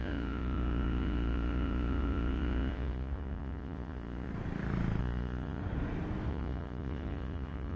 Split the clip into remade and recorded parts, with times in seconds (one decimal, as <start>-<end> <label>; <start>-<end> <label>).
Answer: 0.0-4.3 remade; 4.3-5.0 recorded; 5.0-5.6 remade; 5.6-6.3 recorded; 6.3-7.8 remade